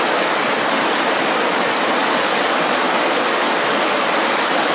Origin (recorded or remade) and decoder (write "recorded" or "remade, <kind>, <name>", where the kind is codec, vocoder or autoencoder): recorded